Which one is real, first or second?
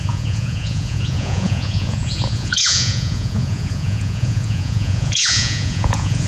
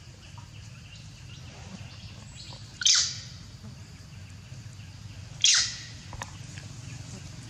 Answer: second